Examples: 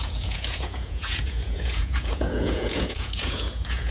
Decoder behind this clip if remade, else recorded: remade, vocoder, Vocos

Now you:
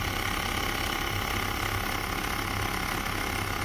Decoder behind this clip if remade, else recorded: recorded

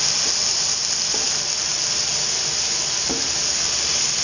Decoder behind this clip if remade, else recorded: recorded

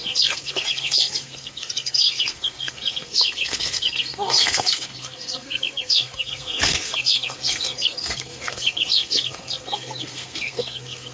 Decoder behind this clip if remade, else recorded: remade, codec, SNAC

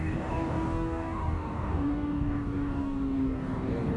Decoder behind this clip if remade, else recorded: remade, codec, DAC